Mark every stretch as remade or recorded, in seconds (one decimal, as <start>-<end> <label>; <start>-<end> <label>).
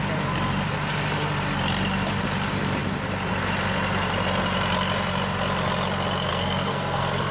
0.0-6.3 recorded; 6.3-7.3 remade